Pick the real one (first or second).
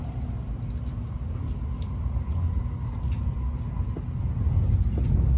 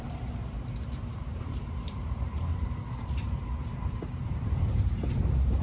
first